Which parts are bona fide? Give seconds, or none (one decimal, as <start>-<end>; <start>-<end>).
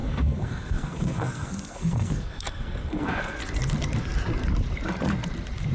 3.4-5.7